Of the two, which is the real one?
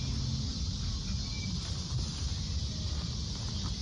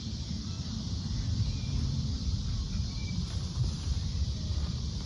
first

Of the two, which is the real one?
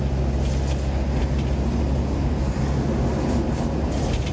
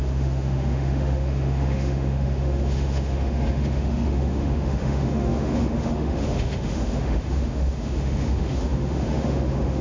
first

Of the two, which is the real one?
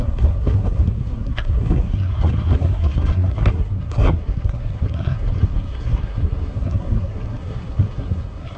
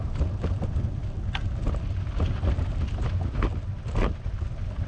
second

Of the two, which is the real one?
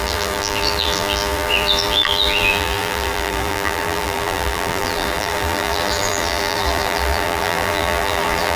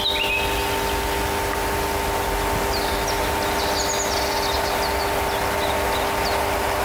second